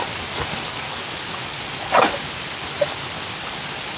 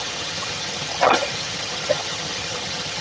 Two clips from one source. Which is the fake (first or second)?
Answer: second